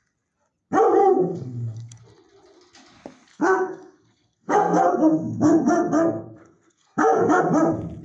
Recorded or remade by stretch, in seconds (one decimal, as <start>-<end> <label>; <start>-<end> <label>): 0.0-1.0 recorded; 1.0-2.0 remade; 2.0-3.3 recorded; 3.3-7.4 remade; 7.4-8.0 recorded